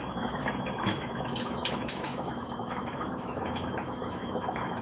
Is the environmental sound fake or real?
fake